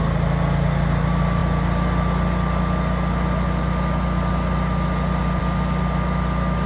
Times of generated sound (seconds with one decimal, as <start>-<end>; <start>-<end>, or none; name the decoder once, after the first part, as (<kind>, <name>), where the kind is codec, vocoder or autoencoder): none